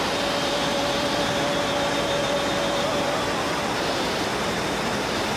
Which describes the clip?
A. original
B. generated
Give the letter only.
A